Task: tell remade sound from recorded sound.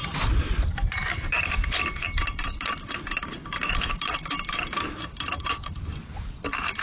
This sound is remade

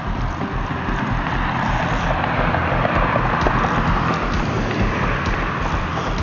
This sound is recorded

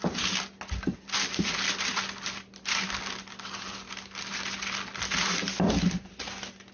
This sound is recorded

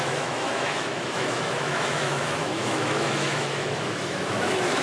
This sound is remade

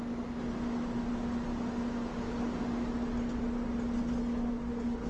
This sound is recorded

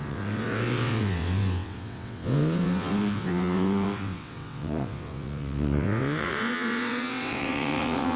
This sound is remade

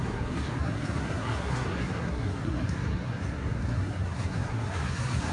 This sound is remade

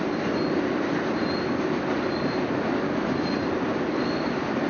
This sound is recorded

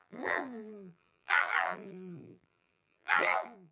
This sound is remade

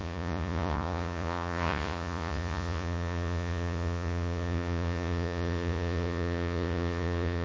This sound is remade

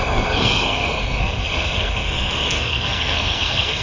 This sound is remade